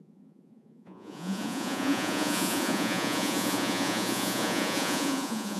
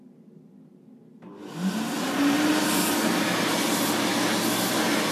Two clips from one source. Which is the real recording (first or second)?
second